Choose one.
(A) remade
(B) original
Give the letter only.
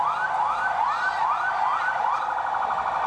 B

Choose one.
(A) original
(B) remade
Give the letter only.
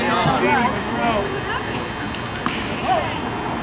A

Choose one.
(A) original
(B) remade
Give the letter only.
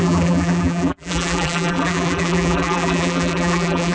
B